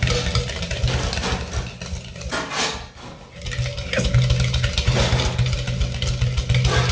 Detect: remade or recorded recorded